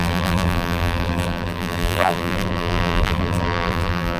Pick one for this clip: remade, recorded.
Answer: remade